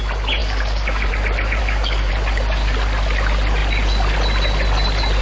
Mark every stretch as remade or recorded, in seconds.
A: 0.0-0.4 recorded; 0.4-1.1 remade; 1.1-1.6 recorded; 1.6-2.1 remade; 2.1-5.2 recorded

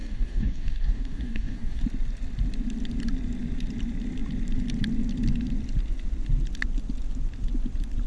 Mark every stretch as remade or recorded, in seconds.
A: 0.0-1.8 remade; 1.8-8.1 recorded

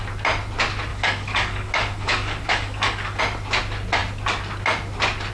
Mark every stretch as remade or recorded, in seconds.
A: 0.0-0.9 recorded; 0.9-3.2 remade; 3.2-5.3 recorded